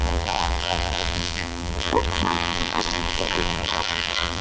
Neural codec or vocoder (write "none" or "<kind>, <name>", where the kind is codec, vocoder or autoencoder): vocoder, BigVGAN v2